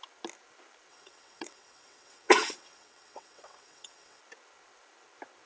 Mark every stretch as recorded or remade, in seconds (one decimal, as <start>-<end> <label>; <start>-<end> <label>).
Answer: 0.0-0.9 recorded; 0.9-4.2 remade; 4.2-5.5 recorded